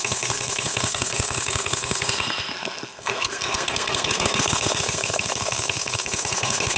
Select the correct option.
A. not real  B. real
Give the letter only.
A